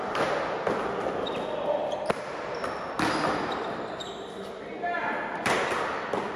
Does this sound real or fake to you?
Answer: real